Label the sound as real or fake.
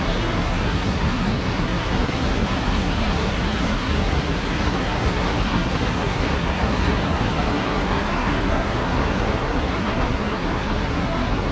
fake